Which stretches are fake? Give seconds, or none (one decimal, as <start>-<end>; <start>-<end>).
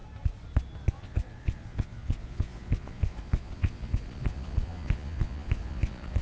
0.9-6.2